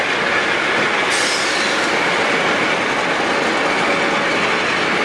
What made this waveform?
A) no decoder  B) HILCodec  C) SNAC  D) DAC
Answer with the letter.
A